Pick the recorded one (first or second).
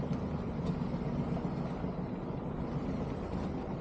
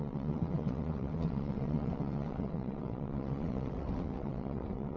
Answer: first